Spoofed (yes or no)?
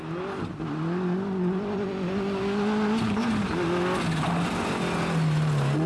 no